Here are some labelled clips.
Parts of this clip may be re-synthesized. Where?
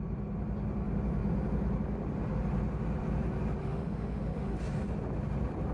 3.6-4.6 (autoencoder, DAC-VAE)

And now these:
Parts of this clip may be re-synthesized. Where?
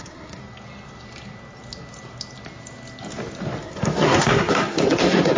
0.0-0.4 (codec, SNAC); 3.6-5.4